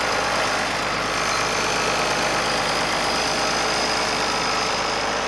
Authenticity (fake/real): fake